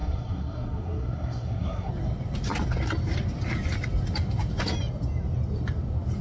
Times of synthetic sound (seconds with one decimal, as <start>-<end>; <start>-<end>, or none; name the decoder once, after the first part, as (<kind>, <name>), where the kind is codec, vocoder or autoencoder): 0.0-1.9 (codec, SNAC)